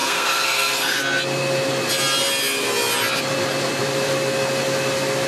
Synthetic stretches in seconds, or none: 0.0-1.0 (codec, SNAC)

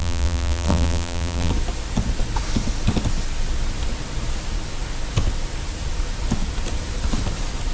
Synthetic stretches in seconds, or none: 0.0-1.5 (vocoder, BigVGAN v2)

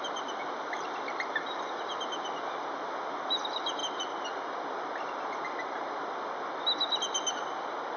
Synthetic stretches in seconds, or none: none

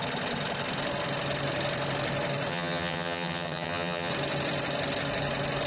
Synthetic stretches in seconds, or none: 2.5-4.1 (vocoder, HiFi-GAN)

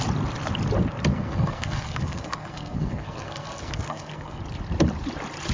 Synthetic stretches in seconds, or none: 1.1-4.4 (codec, SNAC)

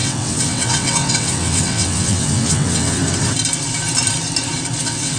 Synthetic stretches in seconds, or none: 0.0-3.0 (vocoder, WaveNeXt); 4.8-5.2

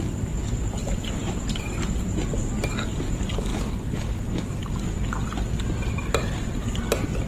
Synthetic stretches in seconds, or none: 0.8-2.3 (vocoder, BigVGAN v2); 6.0-6.8